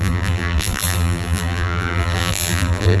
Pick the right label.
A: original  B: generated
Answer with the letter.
B